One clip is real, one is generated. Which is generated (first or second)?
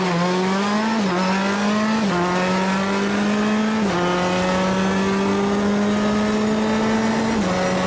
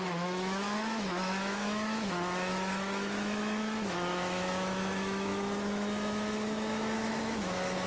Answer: second